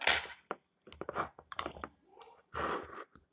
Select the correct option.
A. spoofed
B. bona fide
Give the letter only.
B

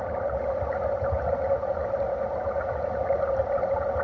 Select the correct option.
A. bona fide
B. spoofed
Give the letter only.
A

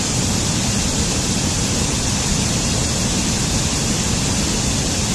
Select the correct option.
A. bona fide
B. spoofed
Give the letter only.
A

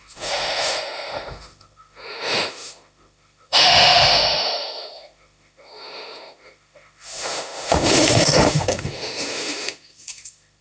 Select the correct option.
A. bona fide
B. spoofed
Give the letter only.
B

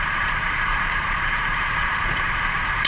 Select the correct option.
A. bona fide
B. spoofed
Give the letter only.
B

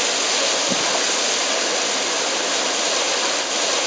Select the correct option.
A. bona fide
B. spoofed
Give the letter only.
A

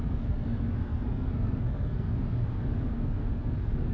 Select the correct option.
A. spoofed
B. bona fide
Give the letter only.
A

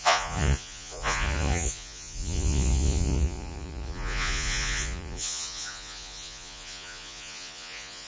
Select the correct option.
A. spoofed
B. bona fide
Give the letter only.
A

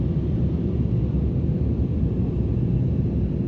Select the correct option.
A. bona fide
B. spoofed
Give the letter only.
A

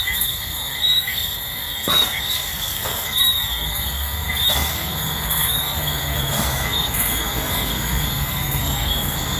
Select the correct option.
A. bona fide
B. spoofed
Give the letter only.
B